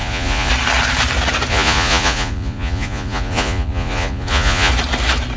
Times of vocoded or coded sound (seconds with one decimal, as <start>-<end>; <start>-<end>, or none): 0.0-0.5; 1.5-4.7